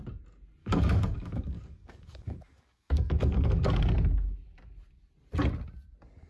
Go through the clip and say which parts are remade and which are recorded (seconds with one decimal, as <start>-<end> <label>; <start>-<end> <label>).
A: 0.0-0.6 recorded; 0.6-3.7 remade; 3.7-6.3 recorded